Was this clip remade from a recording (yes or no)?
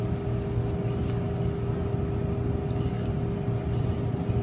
no